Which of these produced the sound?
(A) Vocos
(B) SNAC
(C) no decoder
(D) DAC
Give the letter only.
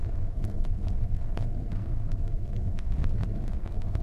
B